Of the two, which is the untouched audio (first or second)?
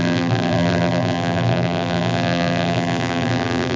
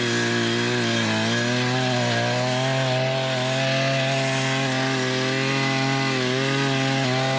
second